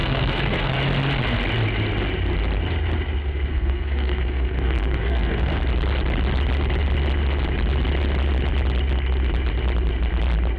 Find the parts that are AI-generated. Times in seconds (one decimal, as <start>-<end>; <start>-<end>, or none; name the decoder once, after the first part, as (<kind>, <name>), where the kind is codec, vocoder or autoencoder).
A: 0.0-0.7 (codec, SNAC); 3.5-5.6